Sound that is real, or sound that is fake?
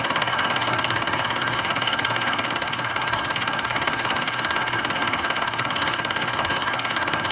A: fake